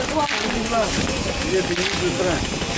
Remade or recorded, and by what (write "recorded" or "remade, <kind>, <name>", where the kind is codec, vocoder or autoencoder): recorded